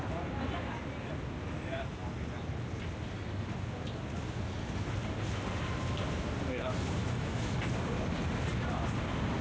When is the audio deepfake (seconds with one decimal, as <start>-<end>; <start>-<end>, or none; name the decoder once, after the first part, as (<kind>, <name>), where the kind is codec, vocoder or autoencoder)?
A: 7.0-7.6 (autoencoder, DAC-VAE)